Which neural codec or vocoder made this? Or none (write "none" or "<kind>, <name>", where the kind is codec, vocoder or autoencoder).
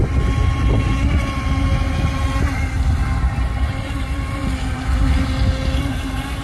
none